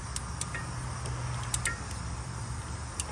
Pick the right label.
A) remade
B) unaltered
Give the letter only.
B